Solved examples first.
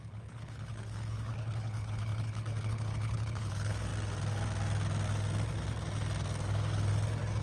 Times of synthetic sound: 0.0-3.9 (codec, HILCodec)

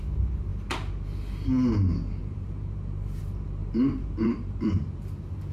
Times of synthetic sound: 2.2-3.2 (vocoder, BigVGAN v2); 3.6-5.0

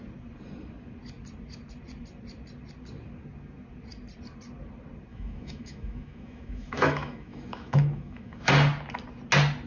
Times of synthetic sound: 5.1-8.5 (autoencoder, DAC-VAE)

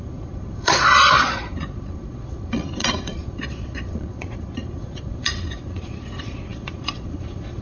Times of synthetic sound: 0.0-7.6 (vocoder, Vocos)

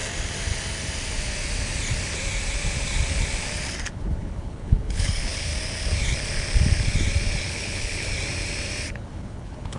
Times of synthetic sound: 3.9-5.5 (codec, HILCodec); 7.4-8.1; 8.9-9.8

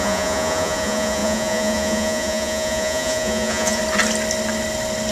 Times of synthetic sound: 0.0-3.8 (vocoder, Vocos)

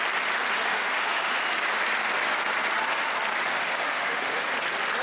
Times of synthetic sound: 0.7-1.3 (autoencoder, DAC-VAE); 3.5-4.5